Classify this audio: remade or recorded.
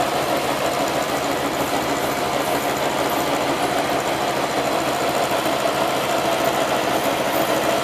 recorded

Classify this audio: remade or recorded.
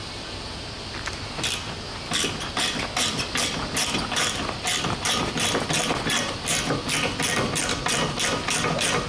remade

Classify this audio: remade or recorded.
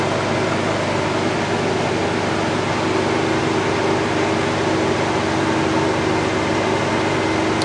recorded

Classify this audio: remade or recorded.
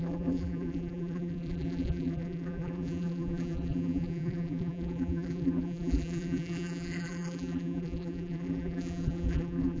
remade